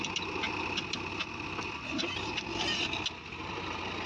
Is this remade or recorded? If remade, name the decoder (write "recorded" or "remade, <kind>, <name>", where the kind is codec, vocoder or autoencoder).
recorded